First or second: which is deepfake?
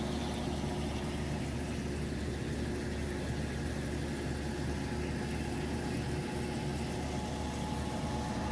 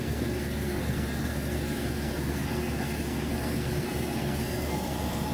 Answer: second